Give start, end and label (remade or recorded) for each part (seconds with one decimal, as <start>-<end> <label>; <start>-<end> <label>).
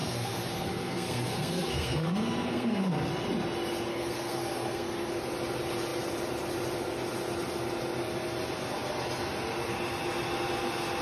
0.0-3.1 remade; 3.1-3.9 recorded; 3.9-5.1 remade; 5.1-11.0 recorded